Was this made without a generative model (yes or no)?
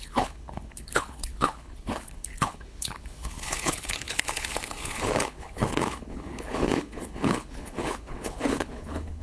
no